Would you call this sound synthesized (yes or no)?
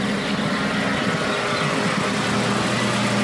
no